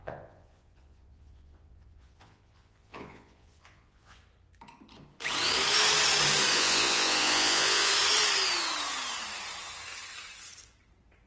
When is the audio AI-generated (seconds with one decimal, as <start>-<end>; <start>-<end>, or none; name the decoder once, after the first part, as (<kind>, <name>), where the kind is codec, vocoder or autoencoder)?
0.0-4.2 (vocoder, Vocos); 6.5-7.9

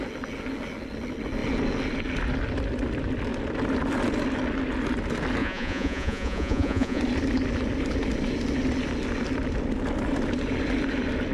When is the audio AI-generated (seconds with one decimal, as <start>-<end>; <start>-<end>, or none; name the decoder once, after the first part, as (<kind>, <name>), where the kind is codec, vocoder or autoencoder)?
5.4-7.0 (vocoder, Vocos)

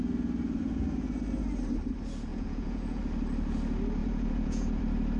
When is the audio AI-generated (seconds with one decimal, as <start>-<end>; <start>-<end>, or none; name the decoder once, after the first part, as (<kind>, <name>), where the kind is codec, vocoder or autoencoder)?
2.3-3.0 (vocoder, Vocos); 4.0-4.8

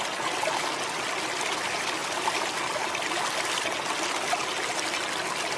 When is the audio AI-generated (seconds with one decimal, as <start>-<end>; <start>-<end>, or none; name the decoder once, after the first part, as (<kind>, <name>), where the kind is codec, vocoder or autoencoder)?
none